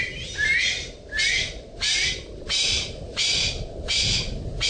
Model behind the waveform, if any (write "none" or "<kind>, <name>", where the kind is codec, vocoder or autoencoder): none